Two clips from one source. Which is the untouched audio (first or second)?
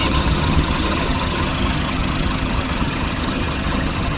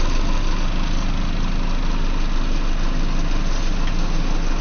second